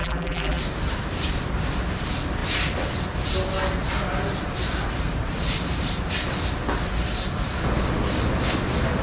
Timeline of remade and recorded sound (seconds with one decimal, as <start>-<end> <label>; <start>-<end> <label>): 0.0-0.6 remade; 0.6-9.0 recorded